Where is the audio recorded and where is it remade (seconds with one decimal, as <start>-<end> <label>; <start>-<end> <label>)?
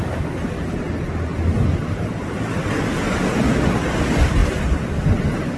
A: 0.0-4.4 recorded; 4.4-5.0 remade; 5.0-5.6 recorded